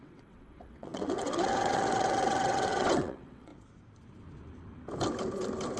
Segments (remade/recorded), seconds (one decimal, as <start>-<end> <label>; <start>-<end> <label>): 0.0-3.5 remade; 3.5-5.8 recorded